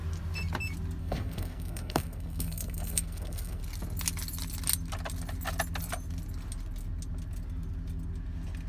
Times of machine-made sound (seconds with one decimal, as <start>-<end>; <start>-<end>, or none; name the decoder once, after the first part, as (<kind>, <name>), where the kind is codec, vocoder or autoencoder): 1.0-3.6 (codec, SNAC)